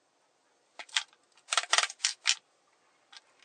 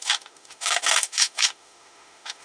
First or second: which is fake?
second